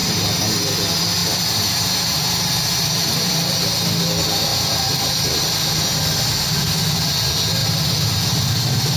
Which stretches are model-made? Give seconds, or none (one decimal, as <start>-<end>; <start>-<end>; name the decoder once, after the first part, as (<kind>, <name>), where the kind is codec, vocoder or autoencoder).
0.0-0.7 (vocoder, BigVGAN v2); 1.2-3.5; 4.5-5.4